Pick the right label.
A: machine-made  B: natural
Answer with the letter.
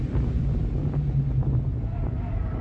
B